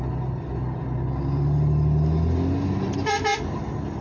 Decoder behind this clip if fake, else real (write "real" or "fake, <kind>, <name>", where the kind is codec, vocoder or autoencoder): real